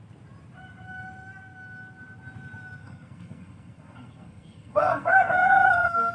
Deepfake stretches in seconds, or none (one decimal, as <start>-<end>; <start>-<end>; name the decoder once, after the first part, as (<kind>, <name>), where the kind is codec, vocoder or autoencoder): 2.8-6.1 (codec, SNAC)